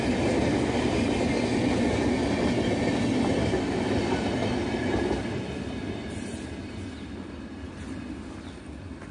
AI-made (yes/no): no